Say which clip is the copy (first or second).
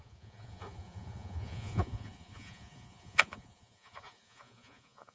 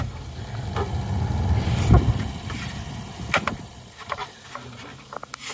first